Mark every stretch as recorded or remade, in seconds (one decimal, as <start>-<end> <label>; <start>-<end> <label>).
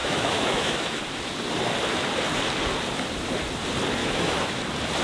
0.0-1.0 remade; 1.0-4.0 recorded; 4.0-4.6 remade; 4.6-5.0 recorded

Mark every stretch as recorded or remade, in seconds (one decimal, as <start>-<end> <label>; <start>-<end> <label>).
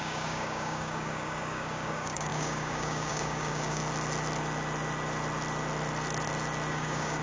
0.0-3.8 remade; 3.8-6.7 recorded; 6.7-7.2 remade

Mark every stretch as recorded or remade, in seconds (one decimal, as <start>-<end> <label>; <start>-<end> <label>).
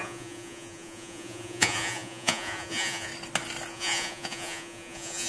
0.0-3.1 remade; 3.1-3.7 recorded; 3.7-5.3 remade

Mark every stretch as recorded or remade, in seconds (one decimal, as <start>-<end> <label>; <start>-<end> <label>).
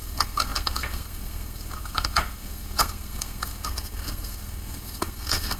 0.0-5.6 remade